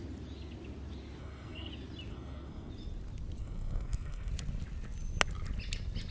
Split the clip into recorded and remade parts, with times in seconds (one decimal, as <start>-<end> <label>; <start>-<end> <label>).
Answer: 0.0-1.2 recorded; 1.2-1.7 remade; 1.7-2.1 recorded; 2.1-2.7 remade; 2.7-3.4 recorded; 3.4-4.3 remade; 4.3-6.1 recorded